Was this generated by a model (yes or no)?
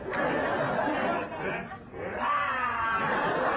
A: no